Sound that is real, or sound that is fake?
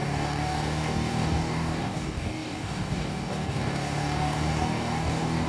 fake